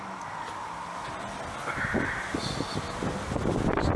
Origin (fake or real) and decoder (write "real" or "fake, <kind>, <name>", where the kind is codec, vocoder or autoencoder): real